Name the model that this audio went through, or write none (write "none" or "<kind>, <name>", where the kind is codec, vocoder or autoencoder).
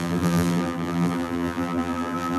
vocoder, BigVGAN v2